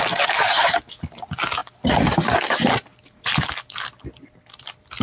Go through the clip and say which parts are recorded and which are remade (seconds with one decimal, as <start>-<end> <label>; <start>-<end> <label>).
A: 0.0-5.0 recorded